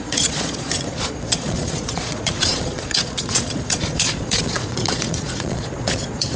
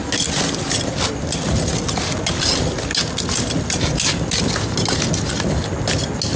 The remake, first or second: first